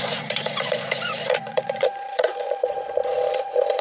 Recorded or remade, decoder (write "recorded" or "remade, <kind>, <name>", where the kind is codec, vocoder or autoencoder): remade, vocoder, Vocos